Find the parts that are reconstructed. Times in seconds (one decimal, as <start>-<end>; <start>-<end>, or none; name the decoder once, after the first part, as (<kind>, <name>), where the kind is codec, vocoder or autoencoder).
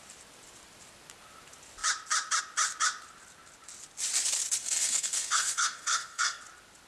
4.6-6.4 (codec, SNAC)